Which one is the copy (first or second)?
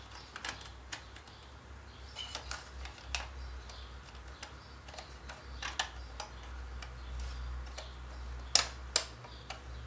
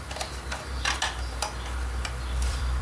second